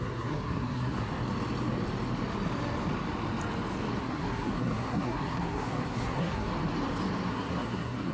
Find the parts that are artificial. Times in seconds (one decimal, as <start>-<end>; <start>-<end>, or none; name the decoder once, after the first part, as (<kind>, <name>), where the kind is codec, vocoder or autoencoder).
0.0-1.1 (codec, SNAC); 4.0-6.5; 7.3-8.1